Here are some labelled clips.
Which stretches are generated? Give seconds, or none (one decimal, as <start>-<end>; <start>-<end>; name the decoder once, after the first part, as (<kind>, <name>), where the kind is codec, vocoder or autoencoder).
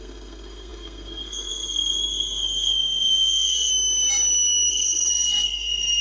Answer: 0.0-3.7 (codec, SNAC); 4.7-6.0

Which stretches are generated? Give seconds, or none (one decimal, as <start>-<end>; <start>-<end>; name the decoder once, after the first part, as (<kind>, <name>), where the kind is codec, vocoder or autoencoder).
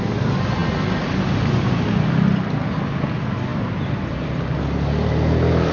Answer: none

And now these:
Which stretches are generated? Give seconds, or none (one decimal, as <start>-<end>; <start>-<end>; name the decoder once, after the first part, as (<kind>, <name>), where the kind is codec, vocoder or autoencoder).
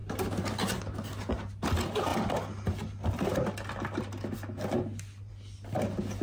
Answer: none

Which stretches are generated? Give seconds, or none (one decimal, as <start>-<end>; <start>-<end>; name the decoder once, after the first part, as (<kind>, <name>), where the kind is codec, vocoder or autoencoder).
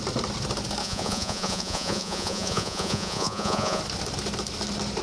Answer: 0.8-3.8 (vocoder, Vocos)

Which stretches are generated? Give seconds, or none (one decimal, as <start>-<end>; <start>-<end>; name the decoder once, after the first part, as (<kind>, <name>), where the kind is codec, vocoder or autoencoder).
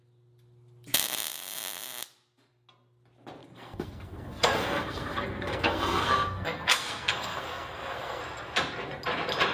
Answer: 3.4-8.2 (codec, SNAC)